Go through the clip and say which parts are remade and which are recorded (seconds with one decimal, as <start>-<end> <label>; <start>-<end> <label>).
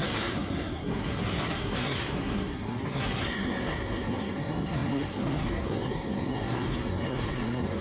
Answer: 0.0-7.8 remade